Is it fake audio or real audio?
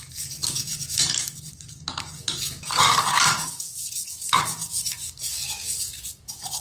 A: fake